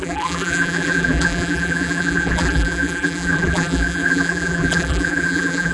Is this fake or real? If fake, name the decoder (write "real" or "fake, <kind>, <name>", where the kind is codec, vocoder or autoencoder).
fake, vocoder, BigVGAN v2